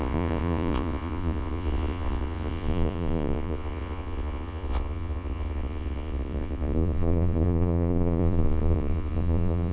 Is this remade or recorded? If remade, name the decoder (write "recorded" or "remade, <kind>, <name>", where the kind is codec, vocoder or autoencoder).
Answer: remade, vocoder, Vocos